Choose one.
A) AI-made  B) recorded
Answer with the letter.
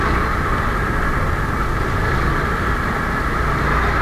B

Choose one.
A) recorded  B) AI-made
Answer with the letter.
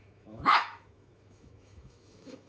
B